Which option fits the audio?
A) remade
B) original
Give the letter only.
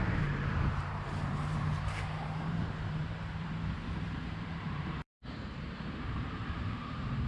A